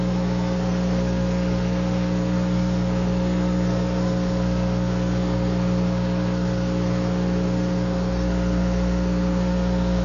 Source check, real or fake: fake